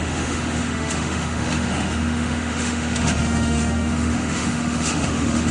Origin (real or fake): fake